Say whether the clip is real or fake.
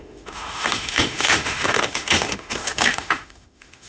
fake